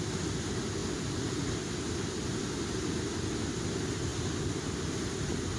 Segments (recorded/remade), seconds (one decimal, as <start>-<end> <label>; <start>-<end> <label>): 0.0-5.6 recorded